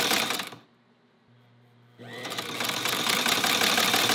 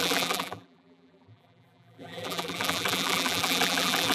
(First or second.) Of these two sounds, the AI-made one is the second